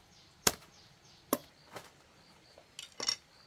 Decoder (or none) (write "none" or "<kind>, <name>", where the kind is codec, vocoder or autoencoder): none